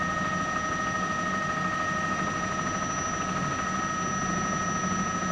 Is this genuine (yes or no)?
yes